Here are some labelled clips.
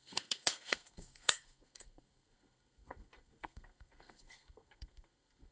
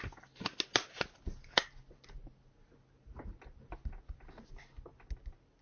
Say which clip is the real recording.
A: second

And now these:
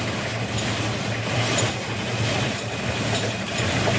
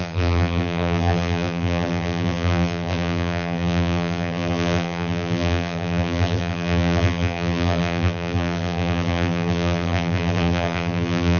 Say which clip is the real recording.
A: first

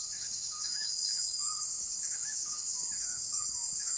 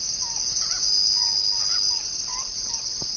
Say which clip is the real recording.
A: second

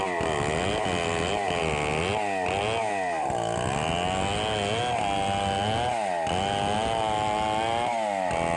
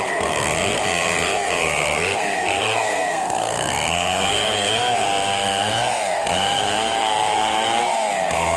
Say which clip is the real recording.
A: first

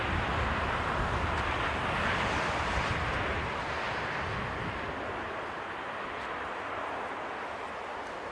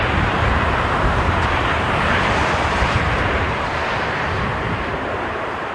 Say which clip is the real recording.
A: first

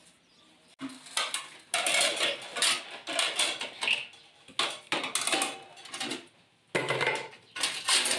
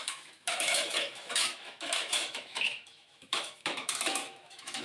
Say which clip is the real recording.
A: first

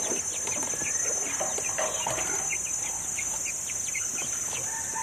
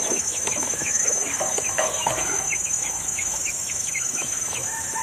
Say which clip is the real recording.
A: first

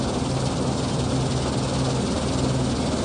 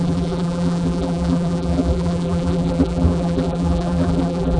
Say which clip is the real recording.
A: first